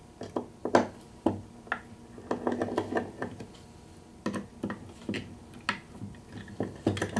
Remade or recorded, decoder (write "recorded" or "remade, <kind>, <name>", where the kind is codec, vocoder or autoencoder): recorded